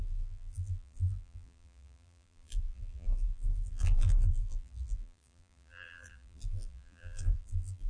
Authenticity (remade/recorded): remade